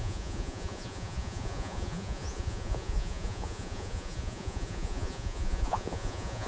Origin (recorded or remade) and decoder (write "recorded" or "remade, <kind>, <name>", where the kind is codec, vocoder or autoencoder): remade, vocoder, Vocos